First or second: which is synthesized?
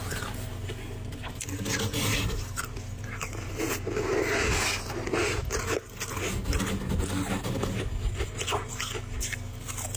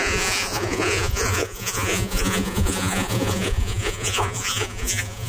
second